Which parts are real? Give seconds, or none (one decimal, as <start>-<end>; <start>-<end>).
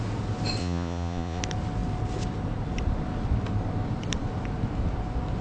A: 0.0-0.6; 1.4-5.4